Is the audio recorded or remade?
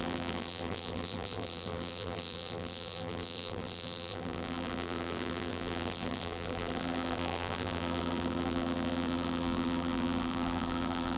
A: remade